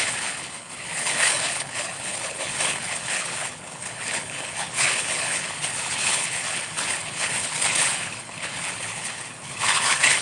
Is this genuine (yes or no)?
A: no